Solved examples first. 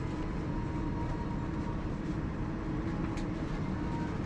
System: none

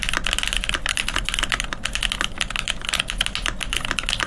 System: none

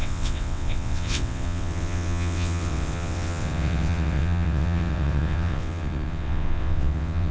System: vocoder, WaveNeXt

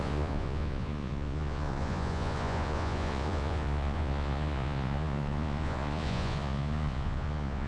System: vocoder, Vocos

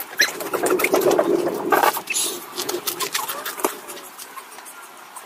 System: none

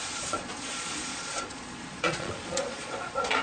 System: vocoder, Vocos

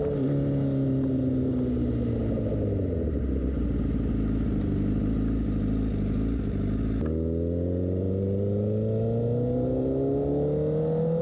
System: none